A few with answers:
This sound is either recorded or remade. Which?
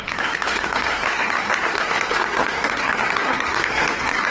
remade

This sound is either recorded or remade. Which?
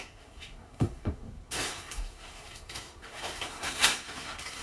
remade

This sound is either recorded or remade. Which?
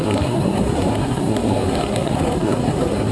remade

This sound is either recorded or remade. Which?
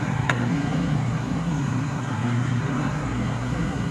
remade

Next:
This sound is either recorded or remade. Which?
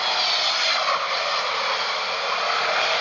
recorded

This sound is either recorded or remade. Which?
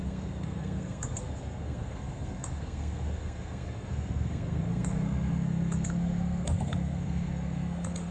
remade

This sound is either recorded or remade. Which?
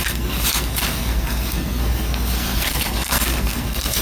remade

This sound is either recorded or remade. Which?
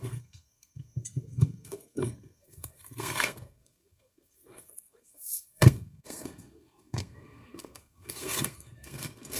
remade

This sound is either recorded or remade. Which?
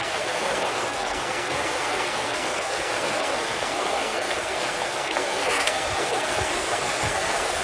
remade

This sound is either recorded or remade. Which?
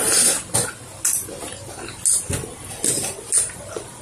recorded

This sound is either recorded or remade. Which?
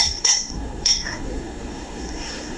remade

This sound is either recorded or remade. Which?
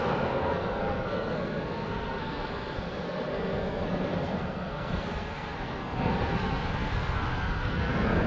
remade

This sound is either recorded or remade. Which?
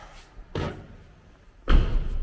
recorded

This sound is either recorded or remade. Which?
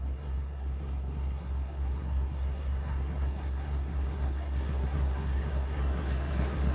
remade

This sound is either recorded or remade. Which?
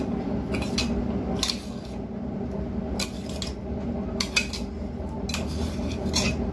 recorded